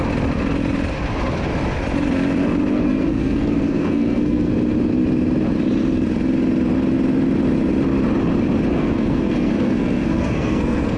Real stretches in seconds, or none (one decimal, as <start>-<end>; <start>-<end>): 0.0-2.7; 4.5-8.7